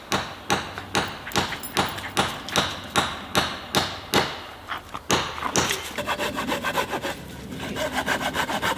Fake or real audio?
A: real